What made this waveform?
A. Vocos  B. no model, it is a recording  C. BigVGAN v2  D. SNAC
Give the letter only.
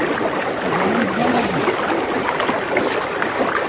B